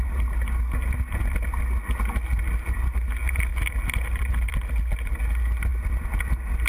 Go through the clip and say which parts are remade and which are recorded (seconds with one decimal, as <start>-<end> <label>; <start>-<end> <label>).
0.0-6.7 recorded